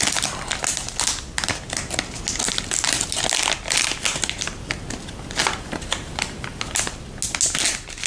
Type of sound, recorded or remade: recorded